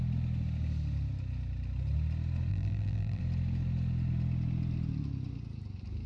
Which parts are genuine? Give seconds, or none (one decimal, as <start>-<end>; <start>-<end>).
0.0-2.5; 3.2-6.1